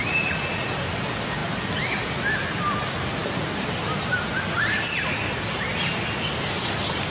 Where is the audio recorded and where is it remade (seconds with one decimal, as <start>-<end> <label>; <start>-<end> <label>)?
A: 0.0-7.1 recorded